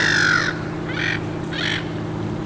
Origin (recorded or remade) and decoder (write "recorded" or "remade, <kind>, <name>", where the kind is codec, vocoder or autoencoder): recorded